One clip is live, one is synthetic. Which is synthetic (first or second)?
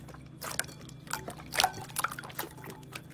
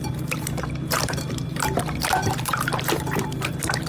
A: second